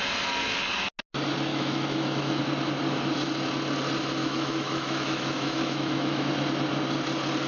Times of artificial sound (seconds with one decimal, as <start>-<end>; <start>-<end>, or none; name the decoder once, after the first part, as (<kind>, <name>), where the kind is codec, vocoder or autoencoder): 1.5-2.4 (autoencoder, DAC-VAE); 4.2-6.3